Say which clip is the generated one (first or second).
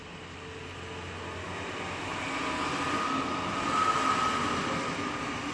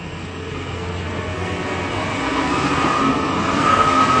second